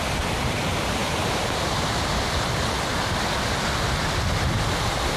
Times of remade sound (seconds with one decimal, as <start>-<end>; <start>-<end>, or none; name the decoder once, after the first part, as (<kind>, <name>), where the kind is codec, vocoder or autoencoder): none